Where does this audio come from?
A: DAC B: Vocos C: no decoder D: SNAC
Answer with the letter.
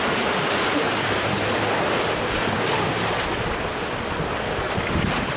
C